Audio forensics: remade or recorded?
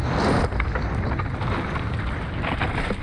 recorded